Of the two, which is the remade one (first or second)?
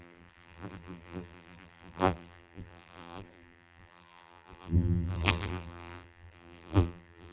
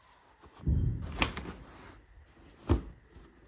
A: first